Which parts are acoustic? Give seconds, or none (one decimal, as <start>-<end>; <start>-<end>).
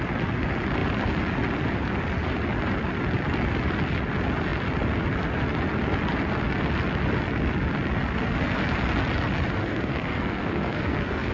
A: 0.0-9.6